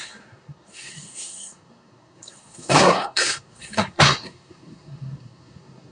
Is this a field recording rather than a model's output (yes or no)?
no